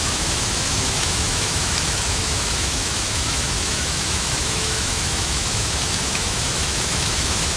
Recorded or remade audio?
remade